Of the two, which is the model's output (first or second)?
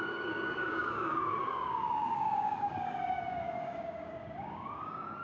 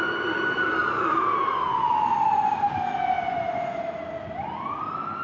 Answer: first